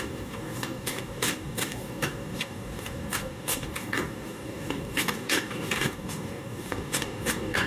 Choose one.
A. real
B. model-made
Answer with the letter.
B